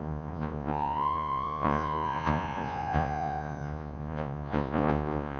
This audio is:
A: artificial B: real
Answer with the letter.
A